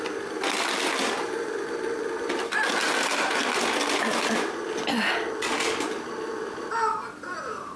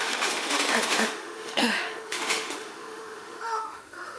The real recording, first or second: first